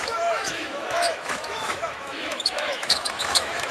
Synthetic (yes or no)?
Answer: yes